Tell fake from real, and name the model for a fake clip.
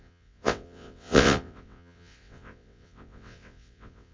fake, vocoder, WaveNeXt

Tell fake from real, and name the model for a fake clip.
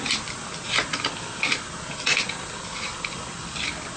real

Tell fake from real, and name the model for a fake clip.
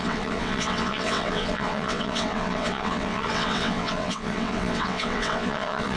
fake, vocoder, WaveNeXt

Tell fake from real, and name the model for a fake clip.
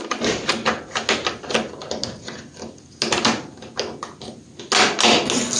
real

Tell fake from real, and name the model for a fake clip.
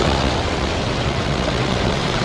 fake, vocoder, WaveNeXt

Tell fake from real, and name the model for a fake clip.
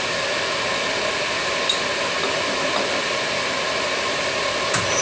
real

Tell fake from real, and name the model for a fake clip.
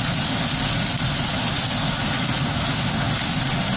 real